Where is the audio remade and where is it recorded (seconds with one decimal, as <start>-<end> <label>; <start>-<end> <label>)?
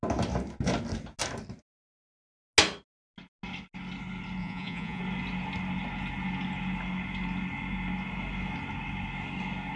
0.0-4.4 recorded; 4.4-5.0 remade; 5.0-9.8 recorded